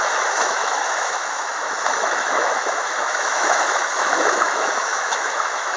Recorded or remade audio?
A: remade